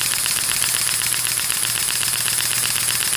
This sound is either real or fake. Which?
real